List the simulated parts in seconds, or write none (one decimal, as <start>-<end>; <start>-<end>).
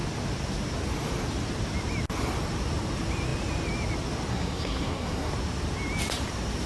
4.3-5.3